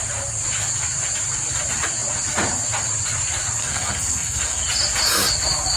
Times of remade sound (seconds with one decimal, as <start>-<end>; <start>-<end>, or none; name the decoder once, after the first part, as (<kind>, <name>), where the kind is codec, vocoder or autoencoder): 3.6-4.6 (codec, SNAC)